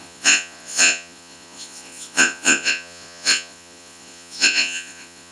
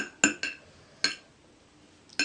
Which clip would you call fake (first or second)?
first